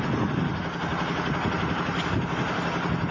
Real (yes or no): yes